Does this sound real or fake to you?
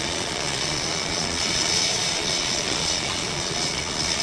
fake